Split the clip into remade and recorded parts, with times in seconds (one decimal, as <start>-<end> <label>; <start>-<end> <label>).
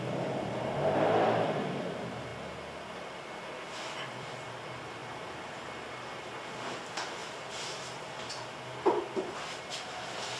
0.0-10.4 recorded